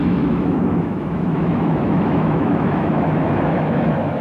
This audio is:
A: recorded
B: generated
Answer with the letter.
B